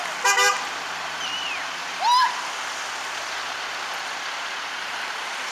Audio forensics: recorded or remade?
recorded